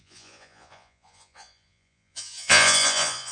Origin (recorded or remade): remade